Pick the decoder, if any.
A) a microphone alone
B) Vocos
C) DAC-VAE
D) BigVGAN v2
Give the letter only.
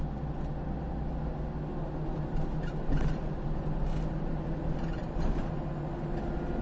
A